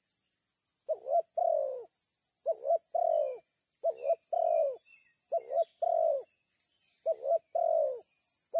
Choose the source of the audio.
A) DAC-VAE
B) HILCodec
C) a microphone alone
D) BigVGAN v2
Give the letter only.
C